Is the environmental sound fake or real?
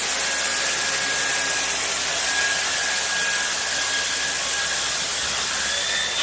real